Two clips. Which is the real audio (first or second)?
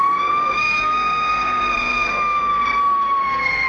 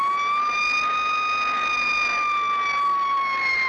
second